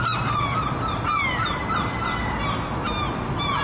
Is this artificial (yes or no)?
no